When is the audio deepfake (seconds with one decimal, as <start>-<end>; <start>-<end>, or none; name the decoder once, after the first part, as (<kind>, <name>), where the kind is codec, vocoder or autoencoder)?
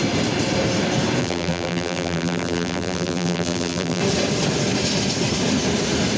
1.2-4.0 (vocoder, BigVGAN v2)